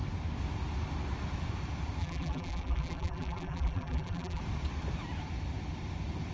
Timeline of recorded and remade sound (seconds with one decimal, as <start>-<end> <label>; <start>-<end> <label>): 0.0-2.0 recorded; 2.0-4.4 remade; 4.4-6.3 recorded